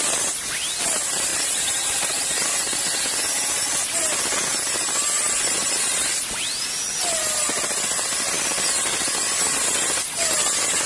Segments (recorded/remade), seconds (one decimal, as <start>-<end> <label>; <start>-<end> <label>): 0.0-1.3 recorded; 1.3-2.5 remade; 2.5-10.9 recorded